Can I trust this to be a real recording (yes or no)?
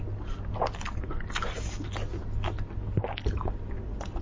yes